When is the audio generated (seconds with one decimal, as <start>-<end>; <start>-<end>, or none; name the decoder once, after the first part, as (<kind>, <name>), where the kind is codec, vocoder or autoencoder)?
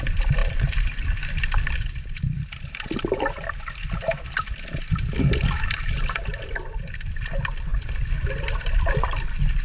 0.0-7.7 (vocoder, BigVGAN v2); 8.5-9.6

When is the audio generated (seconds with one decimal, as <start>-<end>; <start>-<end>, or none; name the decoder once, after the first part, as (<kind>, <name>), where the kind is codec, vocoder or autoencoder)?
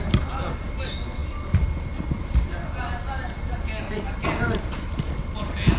none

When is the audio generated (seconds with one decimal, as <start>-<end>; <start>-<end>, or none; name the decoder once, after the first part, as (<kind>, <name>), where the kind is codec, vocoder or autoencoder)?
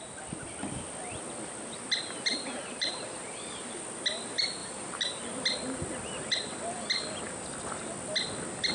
2.3-3.8 (vocoder, BigVGAN v2); 4.6-5.2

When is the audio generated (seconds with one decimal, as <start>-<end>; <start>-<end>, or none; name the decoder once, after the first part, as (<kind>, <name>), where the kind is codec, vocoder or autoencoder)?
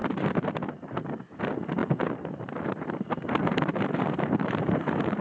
0.0-1.4 (vocoder, BigVGAN v2); 1.8-5.2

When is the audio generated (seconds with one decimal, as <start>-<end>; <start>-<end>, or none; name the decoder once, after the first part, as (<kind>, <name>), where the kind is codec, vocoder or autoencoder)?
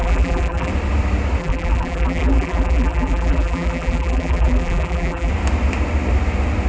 0.0-0.7 (vocoder, BigVGAN v2); 1.4-5.3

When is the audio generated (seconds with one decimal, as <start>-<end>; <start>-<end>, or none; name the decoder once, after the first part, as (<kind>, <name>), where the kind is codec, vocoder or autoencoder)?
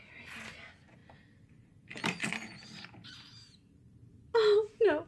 1.0-4.1 (vocoder, BigVGAN v2)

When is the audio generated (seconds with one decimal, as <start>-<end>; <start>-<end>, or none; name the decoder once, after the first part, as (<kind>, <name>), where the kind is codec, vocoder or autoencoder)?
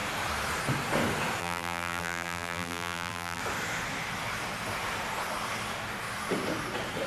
1.4-3.4 (vocoder, BigVGAN v2)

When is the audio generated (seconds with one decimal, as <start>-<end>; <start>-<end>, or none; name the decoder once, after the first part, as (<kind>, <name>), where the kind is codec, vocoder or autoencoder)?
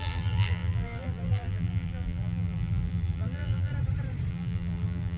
0.0-3.7 (vocoder, BigVGAN v2); 4.3-5.2